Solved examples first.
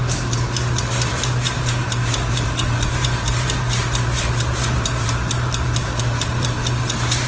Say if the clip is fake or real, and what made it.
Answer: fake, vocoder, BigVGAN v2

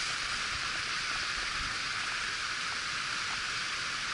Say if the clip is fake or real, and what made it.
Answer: real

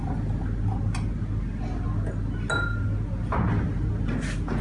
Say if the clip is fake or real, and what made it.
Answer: real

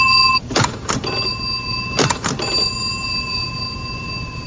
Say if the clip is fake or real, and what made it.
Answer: fake, vocoder, BigVGAN v2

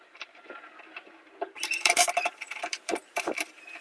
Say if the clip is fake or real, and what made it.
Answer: fake, vocoder, BigVGAN v2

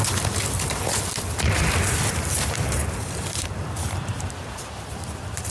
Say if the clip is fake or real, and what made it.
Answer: fake, vocoder, BigVGAN v2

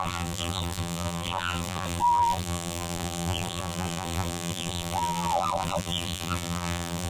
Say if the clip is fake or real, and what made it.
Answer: fake, vocoder, BigVGAN v2